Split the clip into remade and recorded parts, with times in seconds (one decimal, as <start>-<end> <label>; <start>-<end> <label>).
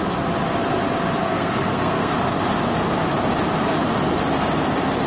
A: 0.0-1.2 recorded; 1.2-2.1 remade; 2.1-5.1 recorded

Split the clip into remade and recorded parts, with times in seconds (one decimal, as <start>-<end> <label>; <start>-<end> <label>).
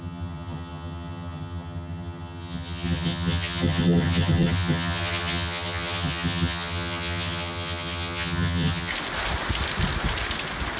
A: 0.0-8.9 remade; 8.9-10.8 recorded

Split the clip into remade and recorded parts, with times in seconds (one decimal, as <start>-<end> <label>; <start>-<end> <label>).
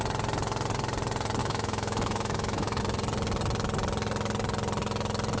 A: 0.0-1.4 recorded; 1.4-2.8 remade; 2.8-5.4 recorded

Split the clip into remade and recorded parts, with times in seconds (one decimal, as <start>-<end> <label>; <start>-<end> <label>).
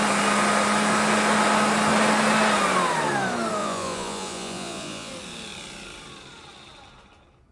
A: 0.0-3.6 recorded; 3.6-5.1 remade; 5.1-7.5 recorded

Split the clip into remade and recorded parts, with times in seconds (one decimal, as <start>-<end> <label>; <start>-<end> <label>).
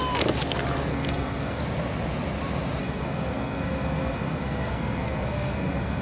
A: 0.0-0.9 recorded; 0.9-1.6 remade; 1.6-2.8 recorded; 2.8-6.0 remade